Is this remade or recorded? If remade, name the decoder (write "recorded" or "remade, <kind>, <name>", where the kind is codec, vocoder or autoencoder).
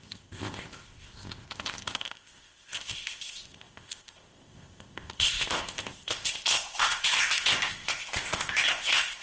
remade, codec, ZipCodec